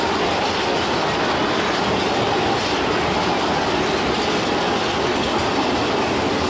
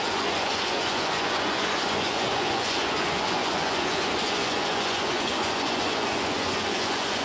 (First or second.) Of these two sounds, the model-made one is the second